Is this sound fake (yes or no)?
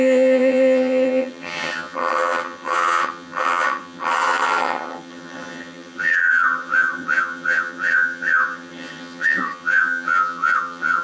yes